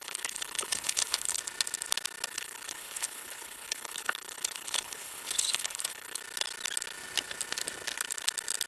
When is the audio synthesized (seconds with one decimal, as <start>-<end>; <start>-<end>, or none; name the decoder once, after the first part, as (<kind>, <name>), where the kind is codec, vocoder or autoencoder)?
0.0-1.4 (codec, HILCodec); 2.3-6.2